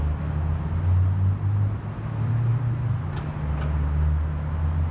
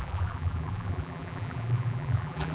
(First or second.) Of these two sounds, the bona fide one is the first